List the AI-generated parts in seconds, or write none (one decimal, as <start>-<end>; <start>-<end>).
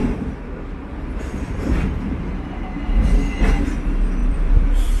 0.0-1.6; 4.2-5.0